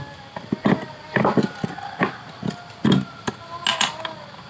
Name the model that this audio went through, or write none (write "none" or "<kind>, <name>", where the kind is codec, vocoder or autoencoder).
none